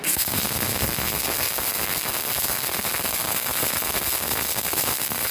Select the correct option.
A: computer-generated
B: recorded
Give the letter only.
A